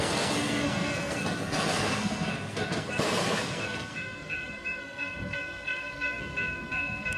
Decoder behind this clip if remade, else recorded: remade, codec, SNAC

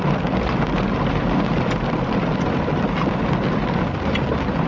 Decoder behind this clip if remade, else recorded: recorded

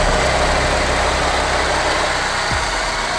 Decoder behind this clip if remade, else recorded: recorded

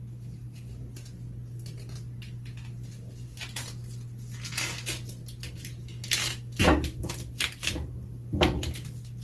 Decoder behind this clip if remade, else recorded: recorded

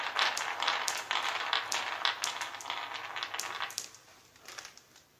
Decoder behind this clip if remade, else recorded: recorded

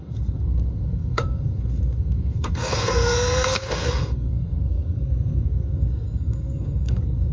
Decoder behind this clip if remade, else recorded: remade, codec, SNAC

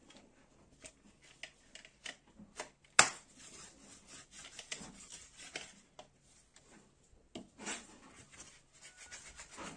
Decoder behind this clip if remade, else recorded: recorded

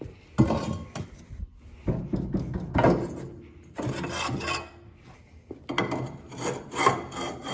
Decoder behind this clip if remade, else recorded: recorded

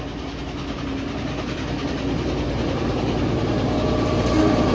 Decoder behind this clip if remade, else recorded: recorded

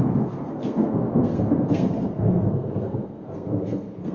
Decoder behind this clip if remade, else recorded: remade, codec, SNAC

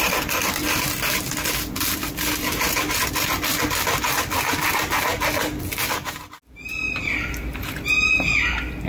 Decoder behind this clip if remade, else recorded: recorded